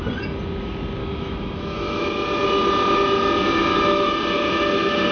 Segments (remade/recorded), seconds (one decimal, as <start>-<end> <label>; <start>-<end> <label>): 0.0-1.0 recorded; 1.0-2.0 remade; 2.0-5.1 recorded